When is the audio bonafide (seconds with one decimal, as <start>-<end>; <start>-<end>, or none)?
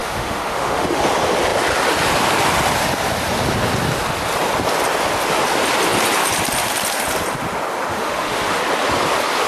1.0-7.9; 8.6-9.5